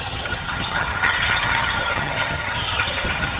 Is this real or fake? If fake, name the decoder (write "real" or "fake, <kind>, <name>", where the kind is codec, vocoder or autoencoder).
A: fake, vocoder, HiFi-GAN